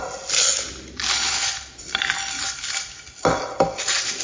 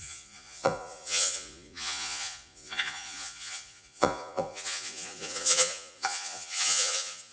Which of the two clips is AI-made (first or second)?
second